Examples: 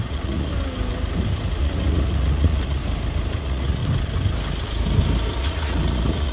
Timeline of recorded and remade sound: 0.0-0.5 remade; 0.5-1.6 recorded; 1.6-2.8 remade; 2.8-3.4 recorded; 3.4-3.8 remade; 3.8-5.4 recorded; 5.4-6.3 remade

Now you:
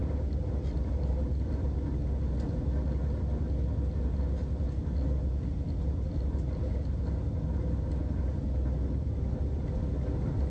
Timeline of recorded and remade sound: 0.0-0.5 remade; 0.5-10.5 recorded

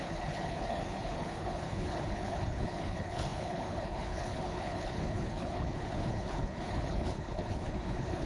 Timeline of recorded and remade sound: 0.0-8.3 remade